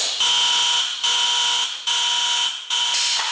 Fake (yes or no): no